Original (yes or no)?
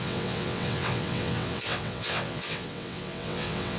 no